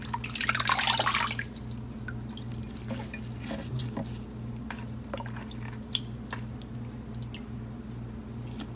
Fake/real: real